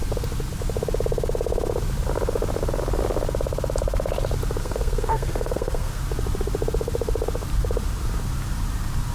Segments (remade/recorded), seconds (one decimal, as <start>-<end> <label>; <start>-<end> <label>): 0.0-4.6 recorded; 4.6-6.0 remade; 6.0-9.1 recorded